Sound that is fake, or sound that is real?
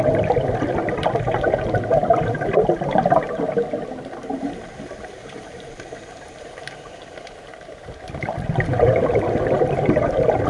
fake